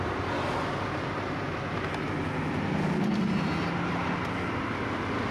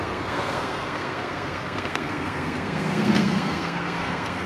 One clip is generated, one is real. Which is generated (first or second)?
second